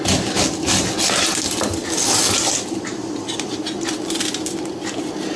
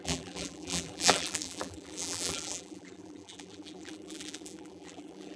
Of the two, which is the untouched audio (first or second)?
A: first